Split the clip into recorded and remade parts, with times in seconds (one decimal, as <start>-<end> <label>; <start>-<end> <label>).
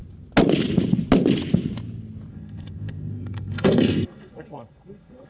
0.0-2.3 recorded; 2.3-5.3 remade